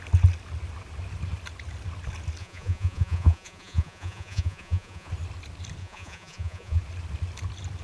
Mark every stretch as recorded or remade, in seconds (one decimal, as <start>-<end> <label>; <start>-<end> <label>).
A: 0.0-2.4 recorded; 2.4-5.1 remade; 5.1-5.8 recorded; 5.8-6.8 remade; 6.8-7.8 recorded